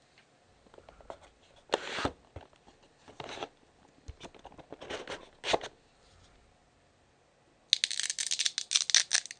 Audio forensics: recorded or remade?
recorded